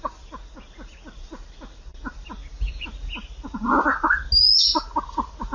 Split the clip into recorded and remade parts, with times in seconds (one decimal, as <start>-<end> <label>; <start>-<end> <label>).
0.0-5.5 recorded